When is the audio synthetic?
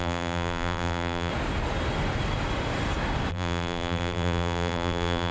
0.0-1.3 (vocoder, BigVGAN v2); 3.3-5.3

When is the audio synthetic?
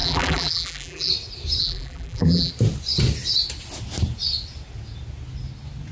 0.0-1.1 (vocoder, BigVGAN v2); 1.6-2.5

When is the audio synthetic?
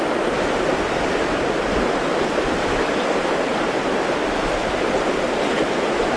none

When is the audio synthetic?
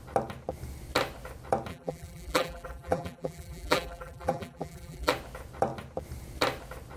1.7-5.1 (vocoder, BigVGAN v2)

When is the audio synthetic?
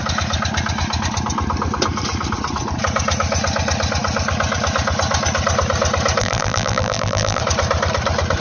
6.2-7.4 (vocoder, BigVGAN v2)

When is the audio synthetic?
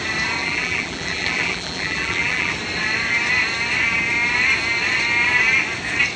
0.4-2.5 (vocoder, BigVGAN v2)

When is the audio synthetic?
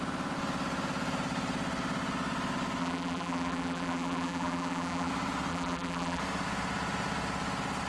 2.8-5.1 (vocoder, BigVGAN v2); 5.5-6.2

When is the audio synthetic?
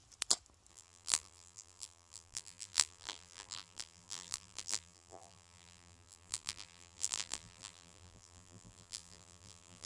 0.7-9.9 (vocoder, BigVGAN v2)